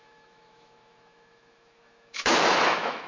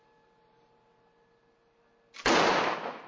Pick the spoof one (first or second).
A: first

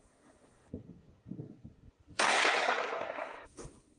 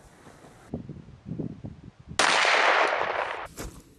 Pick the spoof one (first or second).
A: first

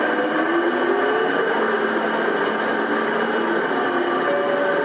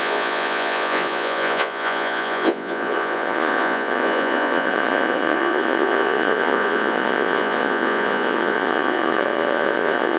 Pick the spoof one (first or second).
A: second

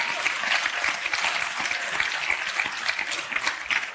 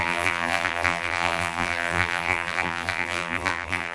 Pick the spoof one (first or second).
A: second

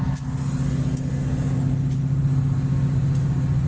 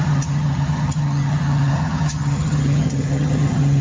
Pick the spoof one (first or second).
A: second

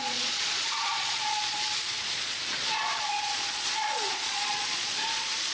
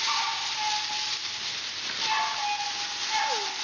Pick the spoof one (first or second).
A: first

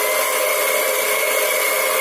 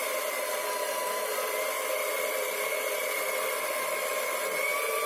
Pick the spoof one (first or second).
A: second